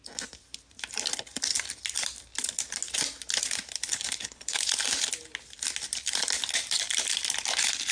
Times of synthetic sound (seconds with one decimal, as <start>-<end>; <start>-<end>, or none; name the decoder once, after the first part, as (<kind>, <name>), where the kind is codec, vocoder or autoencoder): 3.9-4.6 (codec, HILCodec)